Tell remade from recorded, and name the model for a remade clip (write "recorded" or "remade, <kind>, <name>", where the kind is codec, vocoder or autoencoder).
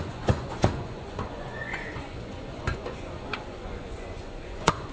remade, vocoder, Vocos